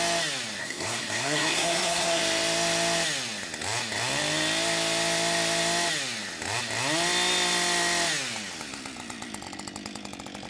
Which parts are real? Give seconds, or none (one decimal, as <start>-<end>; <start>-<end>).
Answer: 0.0-0.6; 2.2-10.5